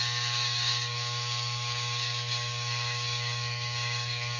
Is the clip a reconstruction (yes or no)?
yes